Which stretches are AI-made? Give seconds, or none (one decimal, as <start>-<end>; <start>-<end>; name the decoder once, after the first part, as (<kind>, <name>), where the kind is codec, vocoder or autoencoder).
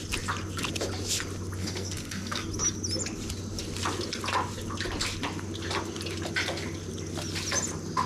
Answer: 1.6-2.5 (codec, SNAC)